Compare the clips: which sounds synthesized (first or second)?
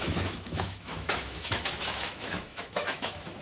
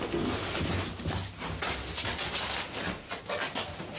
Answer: first